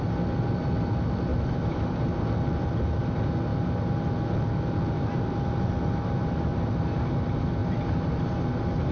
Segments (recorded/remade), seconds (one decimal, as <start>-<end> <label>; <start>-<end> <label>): 0.0-1.3 recorded; 1.3-1.9 remade; 1.9-8.9 recorded